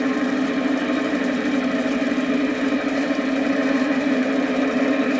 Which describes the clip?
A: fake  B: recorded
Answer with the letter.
A